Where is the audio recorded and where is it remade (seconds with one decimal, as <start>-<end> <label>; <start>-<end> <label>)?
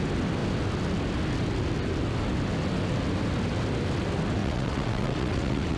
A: 0.0-4.4 recorded; 4.4-5.8 remade